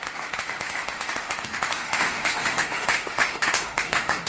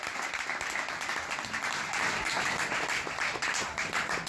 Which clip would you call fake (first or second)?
first